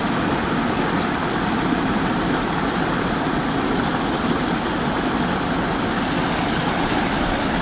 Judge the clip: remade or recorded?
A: recorded